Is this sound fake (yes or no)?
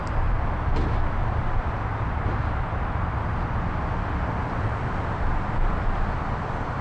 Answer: no